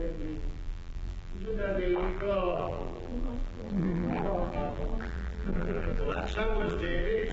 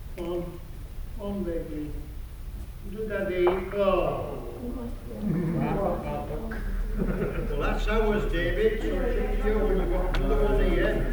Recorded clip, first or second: second